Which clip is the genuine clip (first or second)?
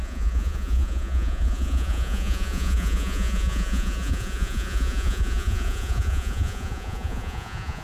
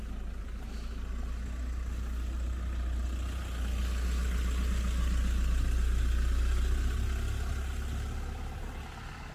second